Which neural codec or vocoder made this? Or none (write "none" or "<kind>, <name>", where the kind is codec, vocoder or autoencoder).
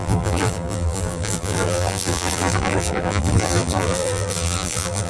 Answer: vocoder, BigVGAN v2